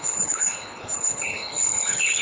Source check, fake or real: fake